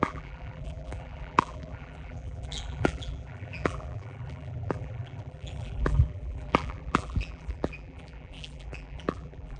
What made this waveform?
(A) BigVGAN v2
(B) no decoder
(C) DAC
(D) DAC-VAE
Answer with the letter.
A